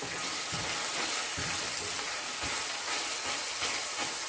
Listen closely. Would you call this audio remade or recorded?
recorded